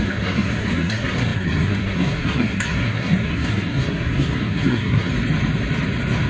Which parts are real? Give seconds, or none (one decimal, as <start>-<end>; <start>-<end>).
5.1-6.3